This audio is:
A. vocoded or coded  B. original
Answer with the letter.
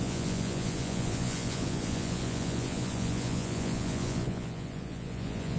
A